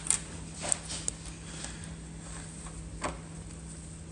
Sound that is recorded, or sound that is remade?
recorded